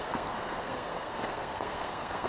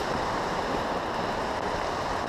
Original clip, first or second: second